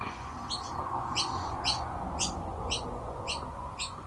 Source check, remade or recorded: remade